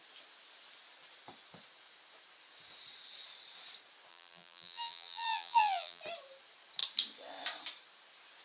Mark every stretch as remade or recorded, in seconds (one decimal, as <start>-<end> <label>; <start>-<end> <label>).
0.0-4.1 recorded; 4.1-6.0 remade; 6.0-8.4 recorded